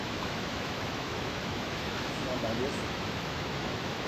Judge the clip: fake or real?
fake